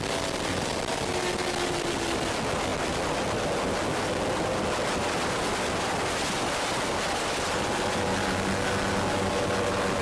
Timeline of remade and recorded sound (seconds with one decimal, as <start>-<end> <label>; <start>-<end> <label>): 0.0-10.0 recorded